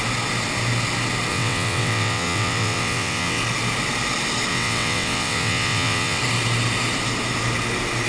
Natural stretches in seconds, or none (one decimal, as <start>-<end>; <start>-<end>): 0.0-1.3; 3.4-4.5; 6.2-8.1

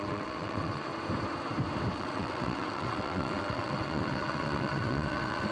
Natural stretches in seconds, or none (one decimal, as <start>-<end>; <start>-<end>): 0.9-1.9

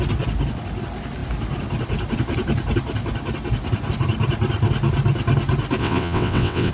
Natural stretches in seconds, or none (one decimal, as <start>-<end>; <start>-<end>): 0.0-5.8

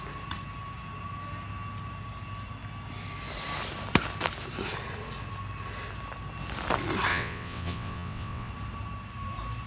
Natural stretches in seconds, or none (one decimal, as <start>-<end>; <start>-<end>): 0.0-7.1; 8.5-9.7